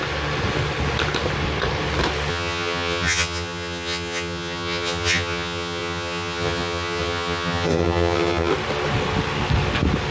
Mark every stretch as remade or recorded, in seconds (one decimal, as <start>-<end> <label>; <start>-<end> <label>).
0.0-2.3 recorded; 2.3-8.5 remade; 8.5-10.1 recorded